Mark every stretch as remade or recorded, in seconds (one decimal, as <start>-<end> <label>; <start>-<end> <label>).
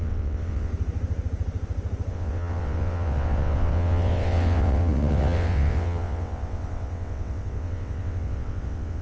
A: 0.0-0.7 remade; 0.7-2.1 recorded; 2.1-9.0 remade